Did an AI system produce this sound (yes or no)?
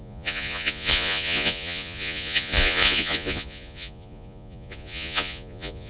yes